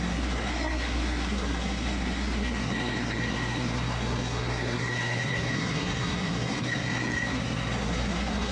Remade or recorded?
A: remade